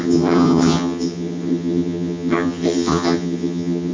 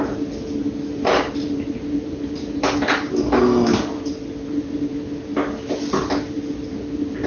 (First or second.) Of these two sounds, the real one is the second